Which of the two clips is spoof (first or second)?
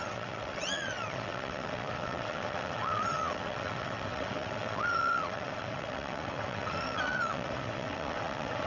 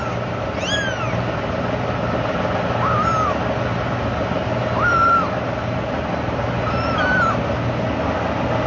first